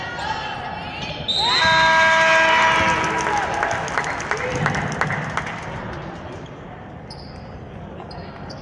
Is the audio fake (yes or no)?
no